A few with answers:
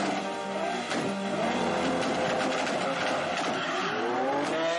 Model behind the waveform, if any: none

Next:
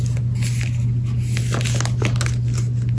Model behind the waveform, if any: none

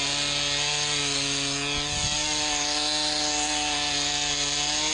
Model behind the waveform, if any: none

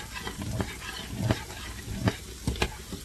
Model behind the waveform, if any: none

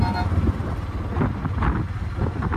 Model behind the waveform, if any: none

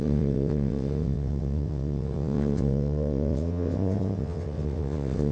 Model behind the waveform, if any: vocoder, WaveNeXt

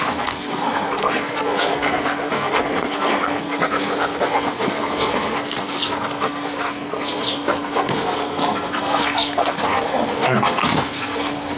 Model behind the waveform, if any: codec, SNAC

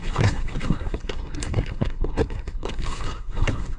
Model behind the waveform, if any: codec, SNAC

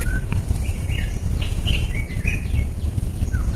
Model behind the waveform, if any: vocoder, BigVGAN v2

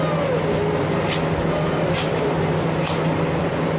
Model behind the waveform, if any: none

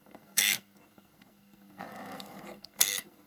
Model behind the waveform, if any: codec, SNAC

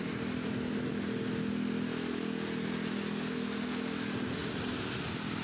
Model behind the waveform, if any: none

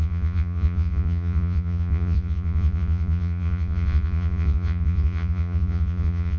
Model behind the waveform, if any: vocoder, Vocos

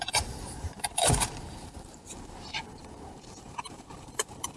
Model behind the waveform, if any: vocoder, BigVGAN v2